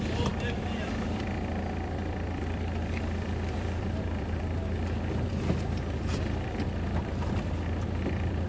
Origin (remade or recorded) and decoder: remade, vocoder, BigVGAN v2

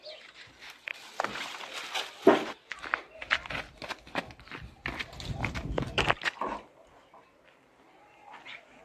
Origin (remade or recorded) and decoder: recorded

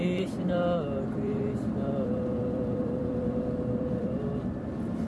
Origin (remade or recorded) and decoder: remade, vocoder, BigVGAN v2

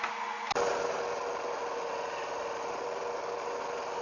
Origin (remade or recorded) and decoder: recorded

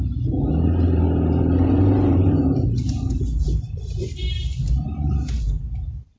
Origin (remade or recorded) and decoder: remade, vocoder, BigVGAN v2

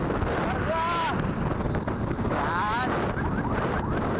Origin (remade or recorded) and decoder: recorded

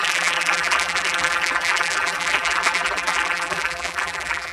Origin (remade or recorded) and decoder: remade, vocoder, BigVGAN v2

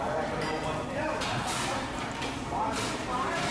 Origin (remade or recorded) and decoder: remade, vocoder, BigVGAN v2